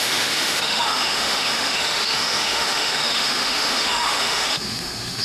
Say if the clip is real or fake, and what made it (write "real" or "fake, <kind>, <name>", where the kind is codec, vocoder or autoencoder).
fake, autoencoder, DAC-VAE